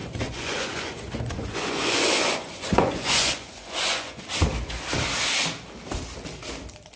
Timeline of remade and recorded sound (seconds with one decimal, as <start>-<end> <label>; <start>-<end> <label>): 0.0-4.2 remade; 4.2-7.0 recorded